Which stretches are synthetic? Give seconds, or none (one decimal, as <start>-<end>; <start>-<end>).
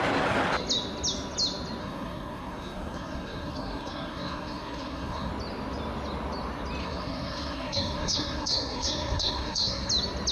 1.8-5.3; 6.8-9.9